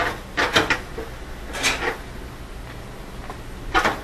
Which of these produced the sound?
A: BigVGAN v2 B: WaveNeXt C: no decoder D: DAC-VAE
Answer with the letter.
C